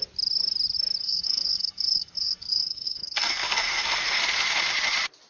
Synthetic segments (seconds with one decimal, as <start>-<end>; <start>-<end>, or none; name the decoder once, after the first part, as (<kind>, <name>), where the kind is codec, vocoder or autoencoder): 1.0-4.2 (codec, SNAC)